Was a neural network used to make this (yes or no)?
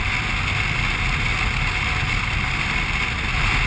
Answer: no